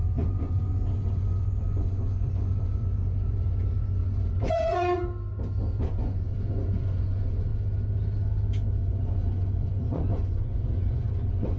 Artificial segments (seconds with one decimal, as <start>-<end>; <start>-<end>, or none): 0.0-5.0; 5.8-7.5; 8.8-11.6